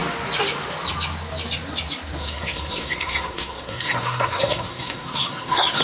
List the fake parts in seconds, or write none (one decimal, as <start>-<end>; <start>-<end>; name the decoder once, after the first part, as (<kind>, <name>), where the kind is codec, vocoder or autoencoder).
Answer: 2.2-5.8 (codec, SNAC)

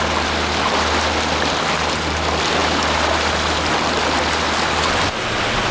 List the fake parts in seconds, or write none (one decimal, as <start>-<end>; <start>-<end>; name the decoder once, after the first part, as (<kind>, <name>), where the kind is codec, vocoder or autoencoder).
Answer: none

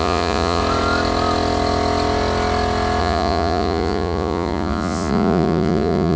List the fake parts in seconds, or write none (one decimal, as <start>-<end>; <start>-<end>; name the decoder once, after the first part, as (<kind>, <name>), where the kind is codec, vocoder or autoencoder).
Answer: 0.0-0.6 (vocoder, Vocos); 3.0-6.2

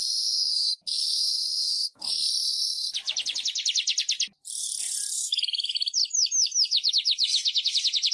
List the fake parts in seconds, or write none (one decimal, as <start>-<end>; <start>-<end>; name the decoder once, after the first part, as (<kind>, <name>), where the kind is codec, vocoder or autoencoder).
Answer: 0.0-2.2 (autoencoder, DAC-VAE); 5.1-7.4